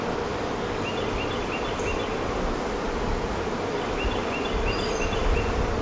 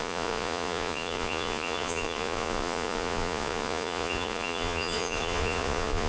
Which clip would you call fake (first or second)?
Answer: second